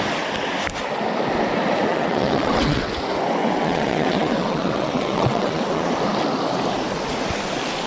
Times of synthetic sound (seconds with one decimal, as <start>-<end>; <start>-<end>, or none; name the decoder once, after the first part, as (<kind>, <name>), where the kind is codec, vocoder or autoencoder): 1.9-2.9 (vocoder, WaveNeXt); 3.4-5.9